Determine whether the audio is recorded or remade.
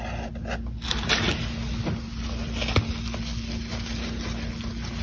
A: recorded